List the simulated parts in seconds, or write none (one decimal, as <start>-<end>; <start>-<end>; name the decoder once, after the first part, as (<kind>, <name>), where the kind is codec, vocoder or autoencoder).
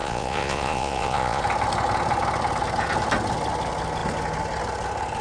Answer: 0.0-1.4 (vocoder, Vocos)